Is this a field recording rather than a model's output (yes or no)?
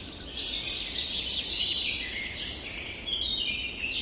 yes